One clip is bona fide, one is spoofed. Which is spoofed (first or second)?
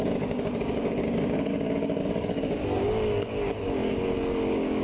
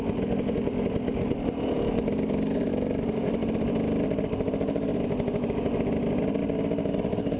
first